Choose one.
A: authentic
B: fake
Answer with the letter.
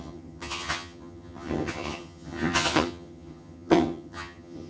B